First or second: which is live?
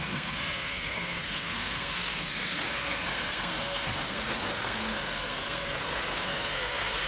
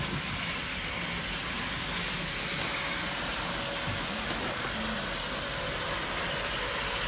second